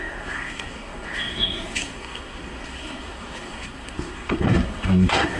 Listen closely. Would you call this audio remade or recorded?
remade